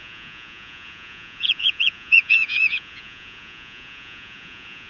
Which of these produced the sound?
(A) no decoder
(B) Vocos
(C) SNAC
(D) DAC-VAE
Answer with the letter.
B